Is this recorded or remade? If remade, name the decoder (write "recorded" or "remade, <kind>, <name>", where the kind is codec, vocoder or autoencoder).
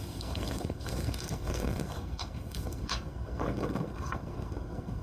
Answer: remade, codec, SNAC